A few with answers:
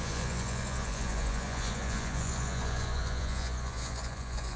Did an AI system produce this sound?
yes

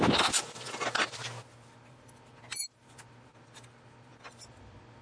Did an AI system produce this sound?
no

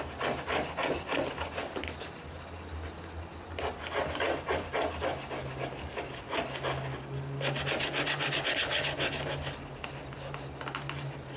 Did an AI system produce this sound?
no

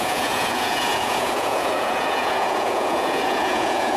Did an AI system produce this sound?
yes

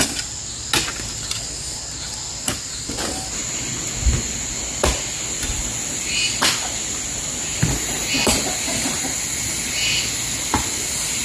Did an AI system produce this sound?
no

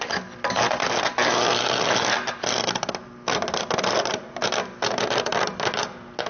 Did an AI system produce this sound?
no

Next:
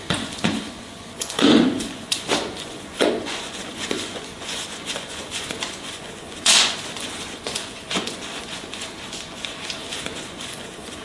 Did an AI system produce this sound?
yes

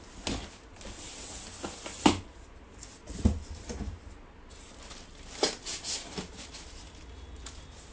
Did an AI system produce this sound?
no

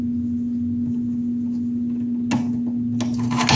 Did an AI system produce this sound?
no